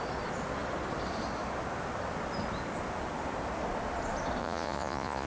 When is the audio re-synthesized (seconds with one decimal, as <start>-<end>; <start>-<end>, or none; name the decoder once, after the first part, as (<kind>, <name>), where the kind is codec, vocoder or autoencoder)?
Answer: 4.4-5.3 (vocoder, Vocos)

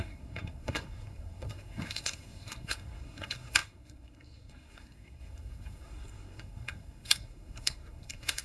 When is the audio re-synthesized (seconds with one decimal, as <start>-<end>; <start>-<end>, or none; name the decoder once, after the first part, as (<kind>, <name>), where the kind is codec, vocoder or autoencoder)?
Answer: 0.0-8.4 (codec, SNAC)

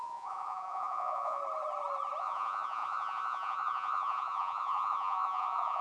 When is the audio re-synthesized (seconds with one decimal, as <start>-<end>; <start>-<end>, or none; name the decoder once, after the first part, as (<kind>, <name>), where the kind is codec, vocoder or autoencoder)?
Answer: 0.0-1.4 (vocoder, Vocos); 2.2-5.8

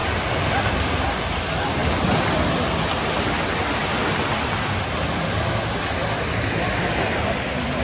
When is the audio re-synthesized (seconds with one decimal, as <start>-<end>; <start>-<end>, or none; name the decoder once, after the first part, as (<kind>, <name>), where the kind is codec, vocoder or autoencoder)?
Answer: none

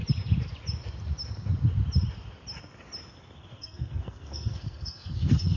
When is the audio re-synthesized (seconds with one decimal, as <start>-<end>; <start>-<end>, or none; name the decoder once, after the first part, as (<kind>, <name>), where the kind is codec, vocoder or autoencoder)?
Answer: 3.4-5.6 (codec, SNAC)

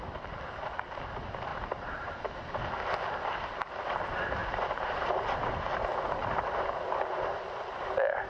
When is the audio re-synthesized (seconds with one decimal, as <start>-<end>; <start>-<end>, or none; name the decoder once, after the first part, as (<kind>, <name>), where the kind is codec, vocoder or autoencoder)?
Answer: 1.5-2.2 (vocoder, BigVGAN v2); 4.4-5.5; 6.2-6.8

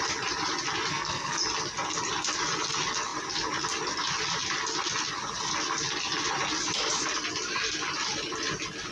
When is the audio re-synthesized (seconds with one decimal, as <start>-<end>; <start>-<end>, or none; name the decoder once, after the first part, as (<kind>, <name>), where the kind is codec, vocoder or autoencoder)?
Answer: 0.9-1.4 (codec, SNAC)

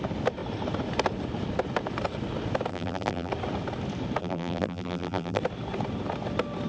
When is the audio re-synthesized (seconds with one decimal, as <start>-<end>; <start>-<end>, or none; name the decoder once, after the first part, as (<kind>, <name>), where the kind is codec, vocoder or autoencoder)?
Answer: 2.7-3.3 (vocoder, BigVGAN v2); 4.2-5.4